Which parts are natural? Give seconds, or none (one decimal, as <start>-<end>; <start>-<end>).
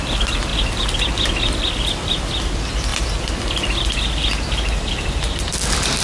0.0-6.0